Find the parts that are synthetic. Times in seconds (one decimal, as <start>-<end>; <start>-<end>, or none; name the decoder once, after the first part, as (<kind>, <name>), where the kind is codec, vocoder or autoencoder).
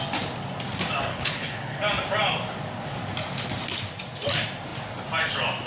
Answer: 1.1-1.8 (codec, HILCodec)